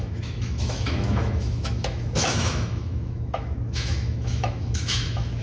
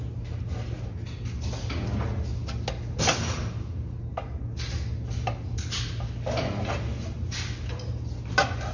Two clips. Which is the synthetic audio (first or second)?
first